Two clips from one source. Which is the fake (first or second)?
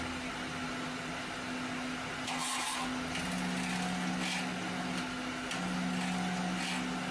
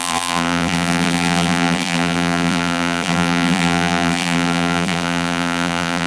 second